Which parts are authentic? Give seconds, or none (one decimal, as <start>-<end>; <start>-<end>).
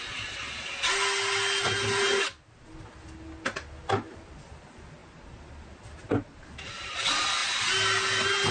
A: 0.0-8.5